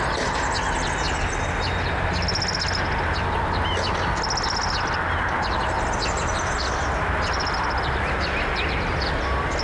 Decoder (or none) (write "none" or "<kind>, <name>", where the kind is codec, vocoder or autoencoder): none